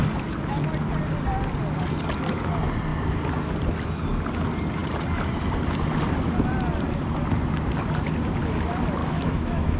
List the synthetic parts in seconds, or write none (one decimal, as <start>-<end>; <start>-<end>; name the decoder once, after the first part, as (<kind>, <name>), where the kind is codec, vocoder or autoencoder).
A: 9.0-9.8 (autoencoder, DAC-VAE)